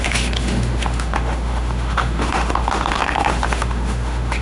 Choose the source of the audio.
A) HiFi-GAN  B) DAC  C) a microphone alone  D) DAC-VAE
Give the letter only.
D